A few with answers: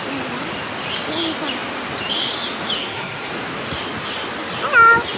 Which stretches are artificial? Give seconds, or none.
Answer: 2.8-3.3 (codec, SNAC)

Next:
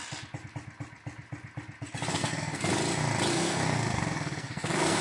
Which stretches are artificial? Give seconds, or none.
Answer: 2.1-2.7 (codec, SNAC); 3.3-5.0

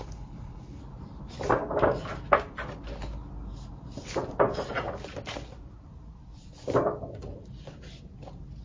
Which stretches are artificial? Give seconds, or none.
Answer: 0.0-0.8 (codec, HILCodec)